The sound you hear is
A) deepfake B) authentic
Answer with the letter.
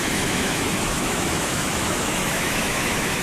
A